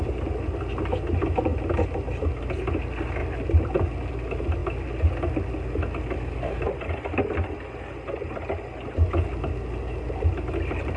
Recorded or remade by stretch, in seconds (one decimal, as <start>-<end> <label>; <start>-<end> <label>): 0.0-11.0 recorded